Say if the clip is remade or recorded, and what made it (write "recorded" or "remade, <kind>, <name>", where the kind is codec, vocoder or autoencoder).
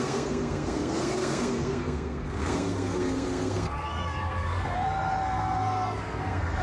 remade, codec, SNAC